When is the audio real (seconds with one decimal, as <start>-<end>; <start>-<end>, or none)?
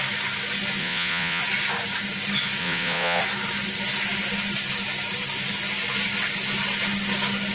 0.0-0.8; 1.4-2.6; 3.2-7.5